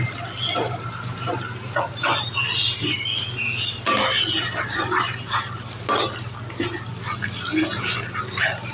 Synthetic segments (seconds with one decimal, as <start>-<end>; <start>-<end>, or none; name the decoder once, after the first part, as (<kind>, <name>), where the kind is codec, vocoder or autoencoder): none